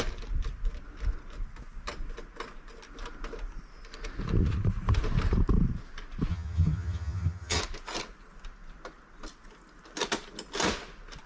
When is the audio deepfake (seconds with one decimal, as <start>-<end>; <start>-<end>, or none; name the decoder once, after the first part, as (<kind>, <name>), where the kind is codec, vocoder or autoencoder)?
6.3-7.6 (vocoder, HiFi-GAN)